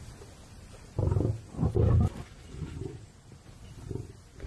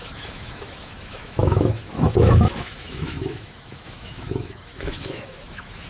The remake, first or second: second